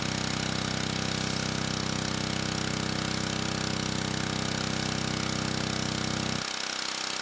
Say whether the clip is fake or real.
real